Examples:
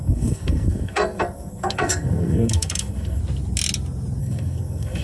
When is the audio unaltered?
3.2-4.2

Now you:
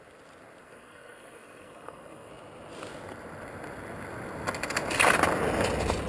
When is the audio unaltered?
0.0-0.6; 2.3-6.1

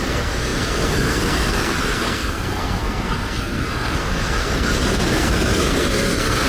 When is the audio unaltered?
none

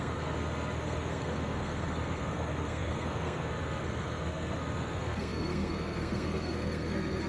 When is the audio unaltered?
none

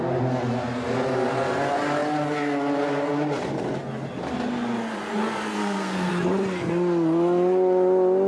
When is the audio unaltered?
0.0-5.6; 6.1-8.3

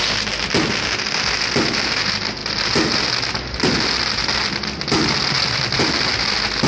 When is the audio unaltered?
0.0-6.7

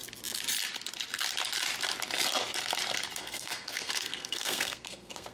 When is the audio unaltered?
0.0-3.2

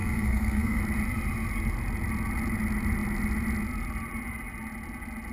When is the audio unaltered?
0.8-5.3